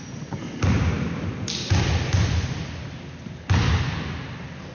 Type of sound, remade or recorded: recorded